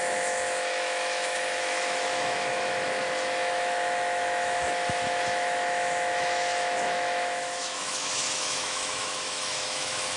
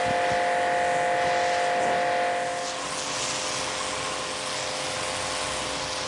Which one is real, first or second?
second